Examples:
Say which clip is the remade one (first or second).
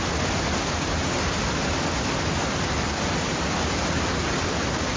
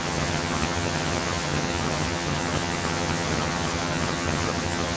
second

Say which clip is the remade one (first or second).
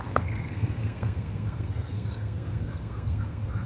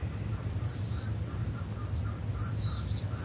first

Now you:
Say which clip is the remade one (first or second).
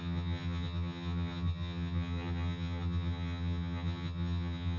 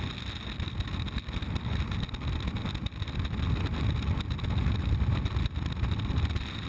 first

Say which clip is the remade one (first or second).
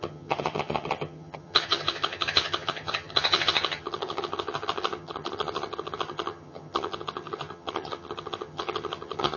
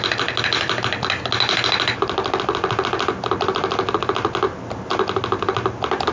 first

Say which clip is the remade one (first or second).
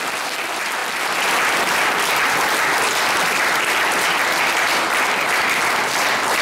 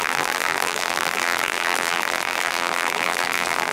second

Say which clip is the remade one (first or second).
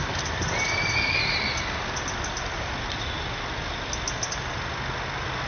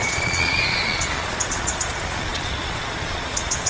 second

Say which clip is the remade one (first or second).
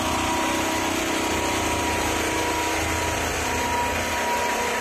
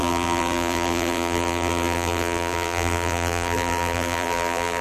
second